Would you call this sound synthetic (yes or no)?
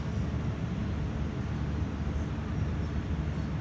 no